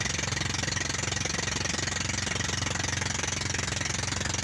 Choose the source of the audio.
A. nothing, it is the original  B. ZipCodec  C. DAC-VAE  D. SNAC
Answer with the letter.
A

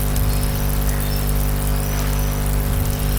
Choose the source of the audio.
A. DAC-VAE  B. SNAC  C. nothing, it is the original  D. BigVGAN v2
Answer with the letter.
C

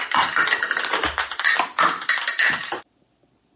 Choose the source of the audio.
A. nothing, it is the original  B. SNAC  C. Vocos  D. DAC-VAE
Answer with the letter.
A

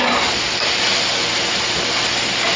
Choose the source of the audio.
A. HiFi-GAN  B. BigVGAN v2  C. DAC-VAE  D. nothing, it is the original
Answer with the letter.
D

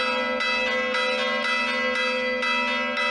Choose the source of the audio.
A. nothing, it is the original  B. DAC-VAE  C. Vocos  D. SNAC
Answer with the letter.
A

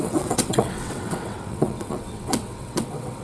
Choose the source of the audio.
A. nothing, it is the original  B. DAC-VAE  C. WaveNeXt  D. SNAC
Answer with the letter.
C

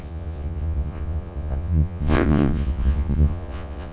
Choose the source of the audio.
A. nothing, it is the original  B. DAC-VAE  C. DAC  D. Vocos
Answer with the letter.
D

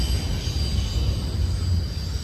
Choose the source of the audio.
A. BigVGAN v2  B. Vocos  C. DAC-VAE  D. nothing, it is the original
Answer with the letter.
D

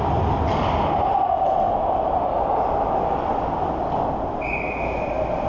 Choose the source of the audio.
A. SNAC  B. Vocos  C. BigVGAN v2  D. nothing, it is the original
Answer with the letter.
D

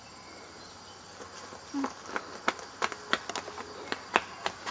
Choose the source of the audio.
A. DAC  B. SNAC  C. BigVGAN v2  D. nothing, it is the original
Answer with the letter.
D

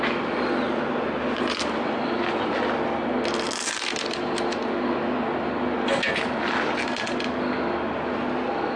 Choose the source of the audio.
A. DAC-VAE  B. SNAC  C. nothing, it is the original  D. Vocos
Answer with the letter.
C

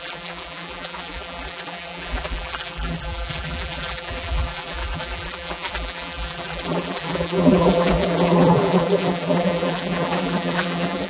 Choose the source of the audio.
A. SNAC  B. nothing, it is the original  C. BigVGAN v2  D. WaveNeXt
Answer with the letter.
C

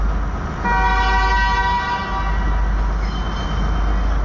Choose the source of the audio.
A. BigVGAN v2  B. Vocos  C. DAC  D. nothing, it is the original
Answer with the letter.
D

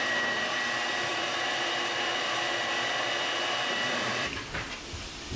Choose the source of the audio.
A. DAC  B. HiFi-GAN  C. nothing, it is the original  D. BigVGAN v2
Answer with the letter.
D